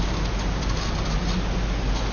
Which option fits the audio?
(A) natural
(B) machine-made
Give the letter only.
A